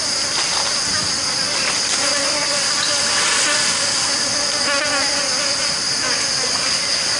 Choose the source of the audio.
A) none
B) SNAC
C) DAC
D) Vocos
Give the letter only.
A